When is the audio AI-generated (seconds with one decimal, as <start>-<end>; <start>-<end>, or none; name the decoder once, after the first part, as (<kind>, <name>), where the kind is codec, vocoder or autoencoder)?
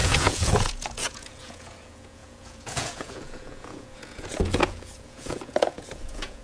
0.0-6.4 (vocoder, Vocos)